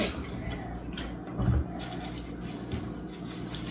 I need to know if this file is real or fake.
real